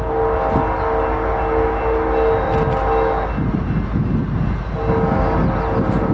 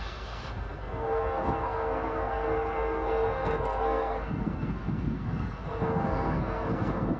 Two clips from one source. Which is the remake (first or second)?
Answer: second